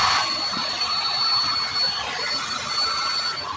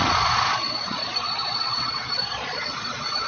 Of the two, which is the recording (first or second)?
first